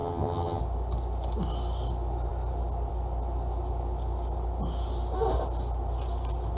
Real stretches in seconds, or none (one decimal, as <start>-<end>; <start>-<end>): 0.6-6.6